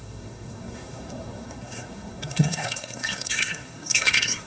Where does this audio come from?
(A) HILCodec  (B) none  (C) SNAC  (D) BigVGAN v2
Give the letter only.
C